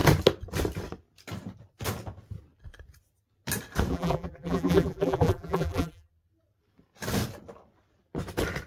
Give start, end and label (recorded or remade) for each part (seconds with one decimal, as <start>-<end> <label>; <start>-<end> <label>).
0.0-3.9 recorded; 3.9-6.1 remade; 6.1-8.7 recorded